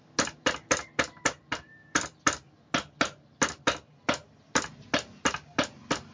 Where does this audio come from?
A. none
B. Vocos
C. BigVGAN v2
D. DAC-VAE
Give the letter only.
A